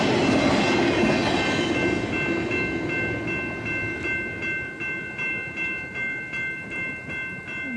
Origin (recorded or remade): recorded